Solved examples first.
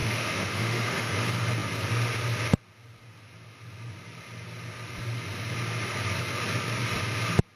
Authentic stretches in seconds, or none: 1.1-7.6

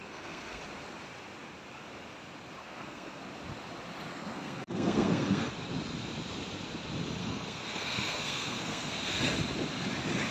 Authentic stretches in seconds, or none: 0.6-2.6; 3.2-4.1; 5.5-7.2; 9.2-10.3

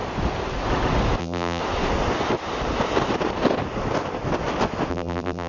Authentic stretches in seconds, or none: 0.0-1.2; 1.6-4.9

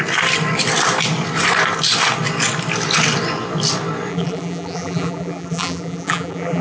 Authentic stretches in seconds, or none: 0.0-4.1